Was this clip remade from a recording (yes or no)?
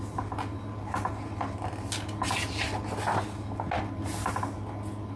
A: no